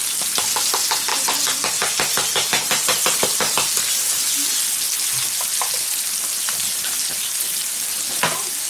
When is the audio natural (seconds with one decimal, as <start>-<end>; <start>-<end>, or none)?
0.0-8.7